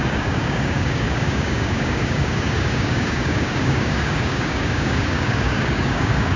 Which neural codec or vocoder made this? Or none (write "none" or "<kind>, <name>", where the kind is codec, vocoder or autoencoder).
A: codec, DAC